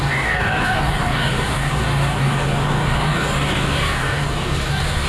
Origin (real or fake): fake